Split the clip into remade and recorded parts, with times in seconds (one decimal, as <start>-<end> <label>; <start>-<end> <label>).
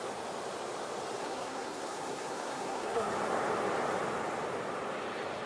0.0-1.2 recorded; 1.2-3.1 remade; 3.1-5.5 recorded